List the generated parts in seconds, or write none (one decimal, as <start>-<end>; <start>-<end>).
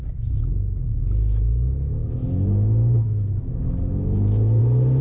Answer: 2.0-4.6